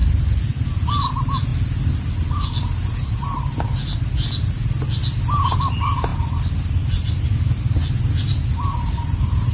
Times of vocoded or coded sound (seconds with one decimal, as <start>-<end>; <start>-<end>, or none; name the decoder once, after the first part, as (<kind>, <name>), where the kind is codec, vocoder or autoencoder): none